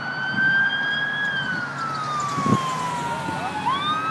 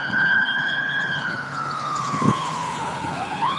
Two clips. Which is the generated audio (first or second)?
second